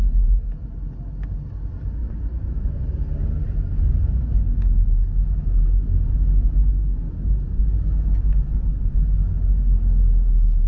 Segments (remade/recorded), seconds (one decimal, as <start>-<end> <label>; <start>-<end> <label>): 0.0-2.0 recorded; 2.0-3.0 remade; 3.0-7.0 recorded; 7.0-7.6 remade; 7.6-10.7 recorded